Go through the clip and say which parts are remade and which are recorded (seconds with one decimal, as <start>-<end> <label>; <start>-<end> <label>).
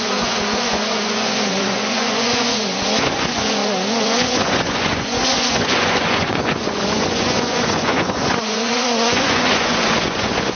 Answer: 0.0-10.5 remade